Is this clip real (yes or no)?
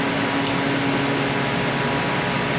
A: yes